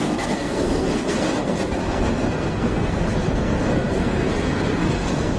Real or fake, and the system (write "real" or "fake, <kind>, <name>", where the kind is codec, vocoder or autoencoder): fake, codec, SNAC